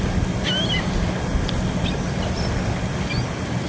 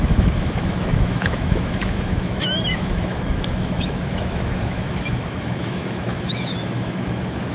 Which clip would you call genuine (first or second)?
first